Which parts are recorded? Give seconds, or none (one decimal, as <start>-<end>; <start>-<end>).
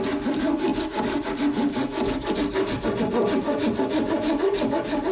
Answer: 0.0-5.1